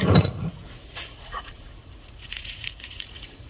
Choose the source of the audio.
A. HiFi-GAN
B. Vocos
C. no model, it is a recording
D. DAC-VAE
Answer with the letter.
B